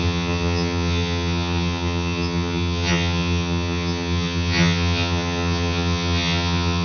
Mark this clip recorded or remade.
remade